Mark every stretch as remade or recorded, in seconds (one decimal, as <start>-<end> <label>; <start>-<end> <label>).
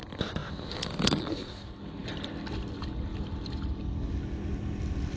0.0-5.2 recorded